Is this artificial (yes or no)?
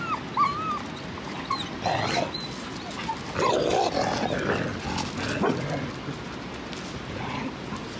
no